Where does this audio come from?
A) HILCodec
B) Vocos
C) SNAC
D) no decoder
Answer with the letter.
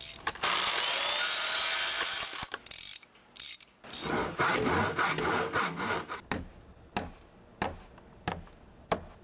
D